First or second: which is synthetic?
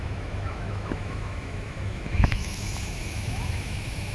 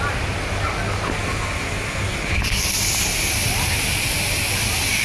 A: first